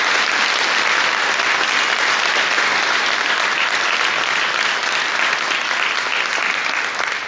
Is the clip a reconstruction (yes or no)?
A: no